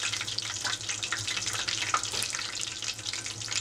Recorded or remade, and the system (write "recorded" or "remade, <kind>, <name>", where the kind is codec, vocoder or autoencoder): recorded